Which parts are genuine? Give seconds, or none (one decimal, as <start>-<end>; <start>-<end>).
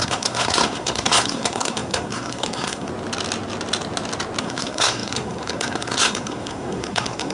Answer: 2.9-4.4